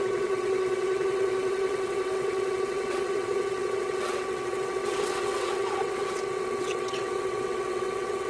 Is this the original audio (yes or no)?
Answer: no